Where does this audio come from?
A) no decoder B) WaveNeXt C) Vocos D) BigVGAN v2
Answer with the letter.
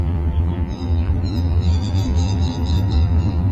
D